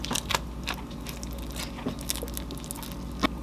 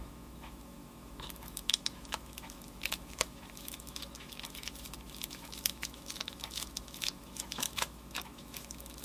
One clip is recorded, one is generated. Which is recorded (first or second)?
first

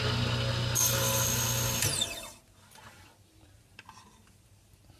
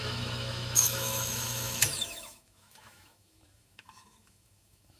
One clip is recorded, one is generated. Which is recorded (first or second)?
first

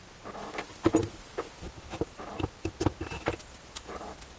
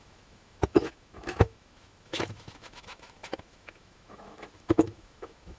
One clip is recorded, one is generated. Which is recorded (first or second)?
first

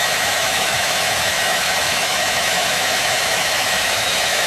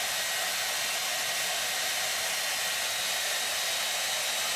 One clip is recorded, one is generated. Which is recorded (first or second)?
second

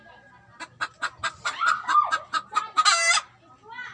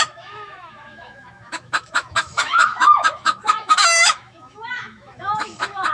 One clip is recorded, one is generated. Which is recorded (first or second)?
first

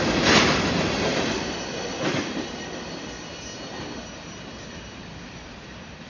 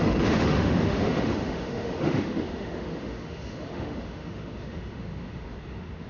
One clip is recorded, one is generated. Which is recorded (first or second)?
first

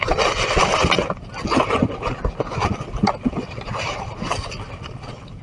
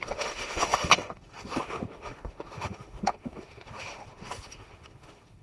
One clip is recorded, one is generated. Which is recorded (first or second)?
first